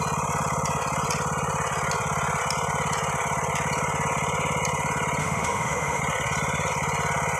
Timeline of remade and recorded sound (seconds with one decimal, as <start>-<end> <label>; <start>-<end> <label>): 0.0-5.2 recorded; 5.2-6.0 remade; 6.0-7.4 recorded